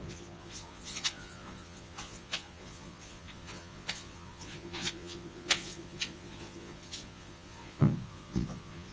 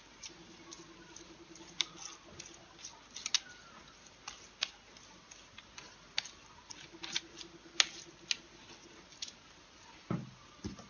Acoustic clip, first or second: second